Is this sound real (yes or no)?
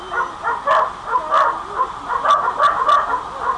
yes